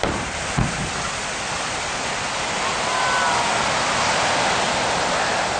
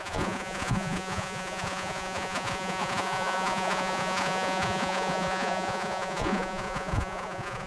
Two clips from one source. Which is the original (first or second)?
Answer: first